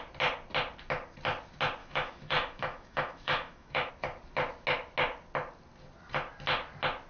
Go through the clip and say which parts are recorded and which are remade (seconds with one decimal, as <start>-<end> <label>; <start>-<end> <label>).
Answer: 0.0-1.8 recorded; 1.8-3.9 remade; 3.9-7.1 recorded